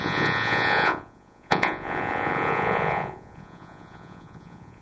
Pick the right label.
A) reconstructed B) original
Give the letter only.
A